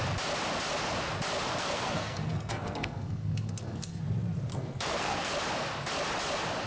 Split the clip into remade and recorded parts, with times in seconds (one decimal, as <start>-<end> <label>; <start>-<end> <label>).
0.0-1.5 recorded; 1.5-4.0 remade; 4.0-4.5 recorded; 4.5-5.3 remade; 5.3-6.7 recorded